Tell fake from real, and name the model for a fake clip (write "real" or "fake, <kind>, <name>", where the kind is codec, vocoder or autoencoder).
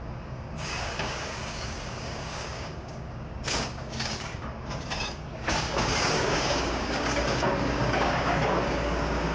fake, codec, DAC